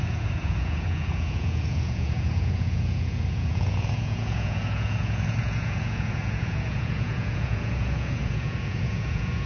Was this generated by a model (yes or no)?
yes